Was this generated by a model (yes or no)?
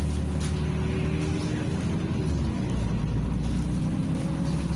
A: no